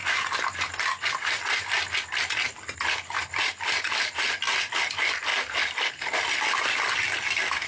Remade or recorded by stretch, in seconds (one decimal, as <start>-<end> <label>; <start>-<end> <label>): 0.0-7.7 recorded